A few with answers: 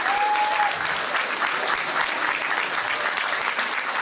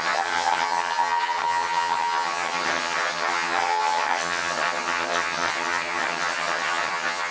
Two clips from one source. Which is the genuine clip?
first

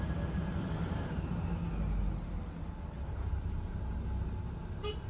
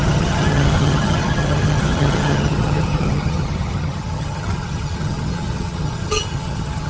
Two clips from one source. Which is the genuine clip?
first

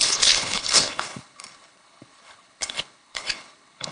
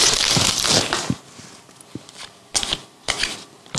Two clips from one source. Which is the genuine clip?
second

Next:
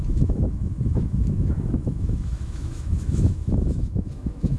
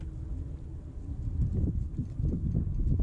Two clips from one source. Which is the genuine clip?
second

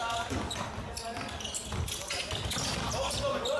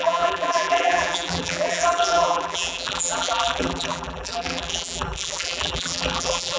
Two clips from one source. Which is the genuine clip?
first